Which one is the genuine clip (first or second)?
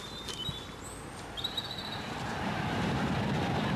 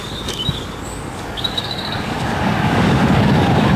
first